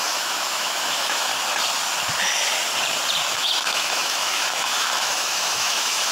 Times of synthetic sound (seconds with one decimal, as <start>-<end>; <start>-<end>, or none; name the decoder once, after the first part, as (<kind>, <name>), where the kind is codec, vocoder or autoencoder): 0.0-1.3 (autoencoder, DAC-VAE); 3.4-6.1